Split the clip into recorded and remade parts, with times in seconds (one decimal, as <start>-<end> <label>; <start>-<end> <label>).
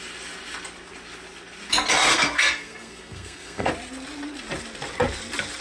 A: 0.0-2.1 recorded; 2.1-3.7 remade; 3.7-5.6 recorded